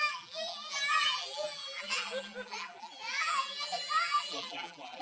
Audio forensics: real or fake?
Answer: fake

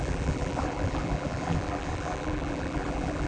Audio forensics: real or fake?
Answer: fake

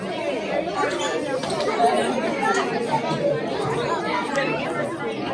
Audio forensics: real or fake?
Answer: real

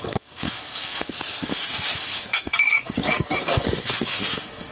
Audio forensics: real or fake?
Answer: fake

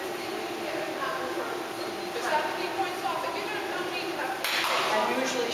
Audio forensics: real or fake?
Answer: real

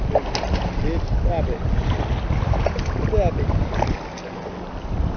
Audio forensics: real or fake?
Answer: real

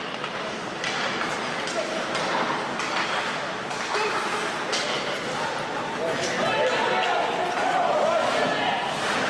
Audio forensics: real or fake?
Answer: real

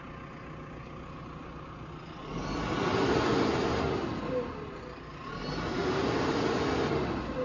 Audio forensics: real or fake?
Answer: real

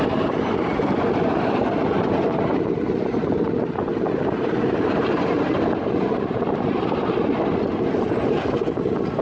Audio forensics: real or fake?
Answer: real